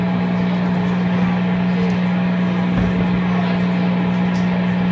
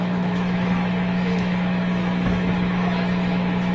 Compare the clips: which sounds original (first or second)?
first